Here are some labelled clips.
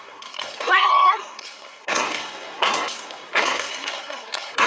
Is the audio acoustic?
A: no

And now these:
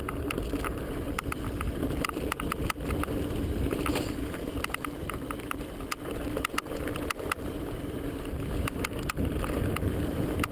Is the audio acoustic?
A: yes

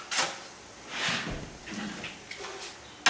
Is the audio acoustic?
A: yes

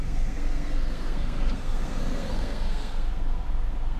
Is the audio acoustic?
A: no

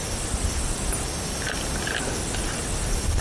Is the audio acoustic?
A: yes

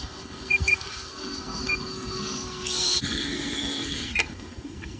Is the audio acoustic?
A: no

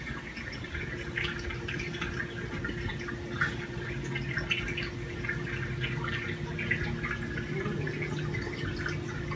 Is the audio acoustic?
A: yes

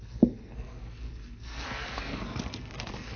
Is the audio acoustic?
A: no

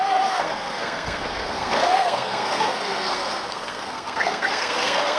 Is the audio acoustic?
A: no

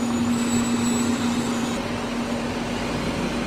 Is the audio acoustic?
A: yes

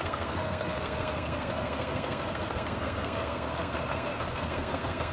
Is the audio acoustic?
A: no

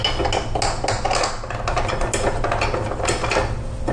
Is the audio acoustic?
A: yes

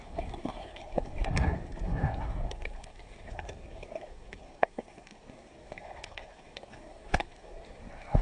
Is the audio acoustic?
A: no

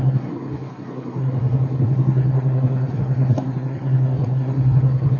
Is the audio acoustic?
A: no